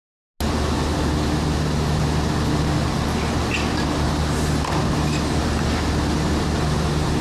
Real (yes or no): yes